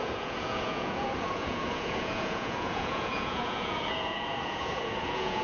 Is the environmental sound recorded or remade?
remade